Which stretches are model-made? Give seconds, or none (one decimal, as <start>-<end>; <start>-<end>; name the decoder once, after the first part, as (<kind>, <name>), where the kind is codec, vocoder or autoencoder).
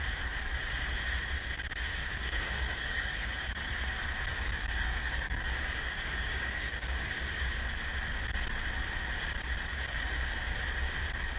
1.9-3.7 (codec, DAC); 4.3-7.1; 9.7-10.6